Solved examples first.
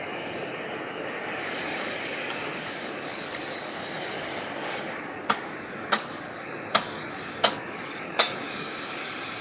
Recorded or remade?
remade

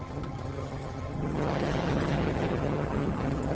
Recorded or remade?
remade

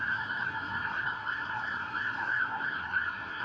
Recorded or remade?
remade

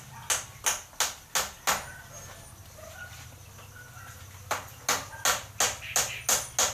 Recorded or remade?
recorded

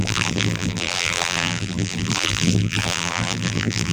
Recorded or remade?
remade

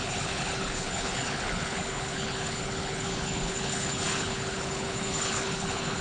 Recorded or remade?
remade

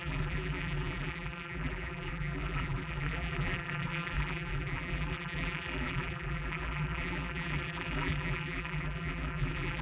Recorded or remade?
remade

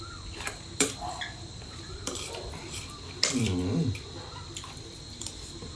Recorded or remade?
remade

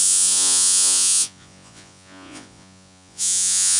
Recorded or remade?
remade